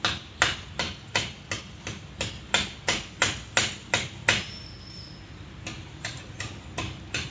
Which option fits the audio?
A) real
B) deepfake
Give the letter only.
A